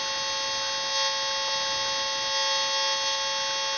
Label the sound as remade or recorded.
recorded